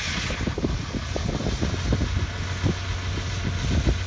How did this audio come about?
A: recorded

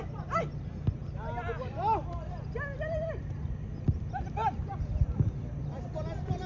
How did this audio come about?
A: recorded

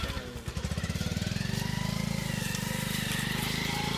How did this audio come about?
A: recorded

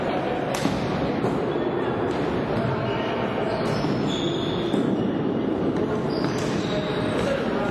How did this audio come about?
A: recorded